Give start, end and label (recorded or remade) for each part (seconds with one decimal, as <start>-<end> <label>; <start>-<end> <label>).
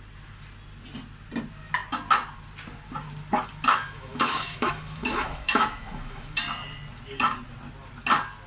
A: 0.0-3.7 recorded; 3.7-6.4 remade; 6.4-8.5 recorded